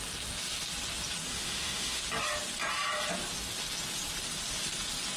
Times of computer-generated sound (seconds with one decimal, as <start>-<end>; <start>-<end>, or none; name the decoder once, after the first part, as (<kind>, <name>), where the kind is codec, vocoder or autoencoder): 1.3-2.0 (autoencoder, DAC-VAE)

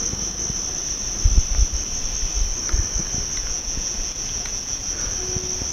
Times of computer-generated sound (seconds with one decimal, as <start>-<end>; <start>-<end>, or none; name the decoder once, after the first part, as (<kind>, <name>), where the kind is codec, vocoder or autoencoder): 3.4-5.0 (vocoder, Vocos)